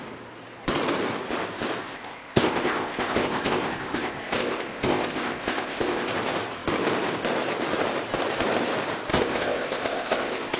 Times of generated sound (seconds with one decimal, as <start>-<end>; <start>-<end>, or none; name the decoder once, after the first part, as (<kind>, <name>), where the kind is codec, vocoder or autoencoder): 1.8-6.1 (codec, ZipCodec); 9.1-10.6